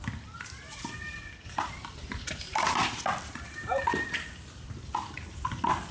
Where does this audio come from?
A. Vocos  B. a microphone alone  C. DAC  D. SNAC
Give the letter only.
B